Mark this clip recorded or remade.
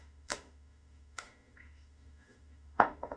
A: remade